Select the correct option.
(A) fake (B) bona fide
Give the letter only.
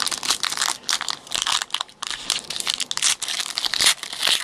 B